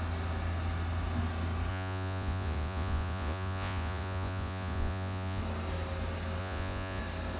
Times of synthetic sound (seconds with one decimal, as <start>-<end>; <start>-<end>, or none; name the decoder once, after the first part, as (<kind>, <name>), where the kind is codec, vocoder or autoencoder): 1.7-5.4 (vocoder, Vocos); 6.4-7.0